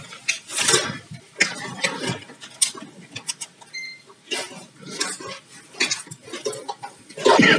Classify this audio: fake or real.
real